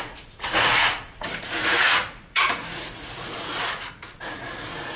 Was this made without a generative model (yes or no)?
no